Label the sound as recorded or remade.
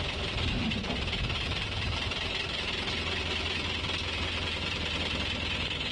remade